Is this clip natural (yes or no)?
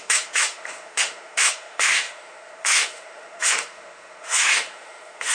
no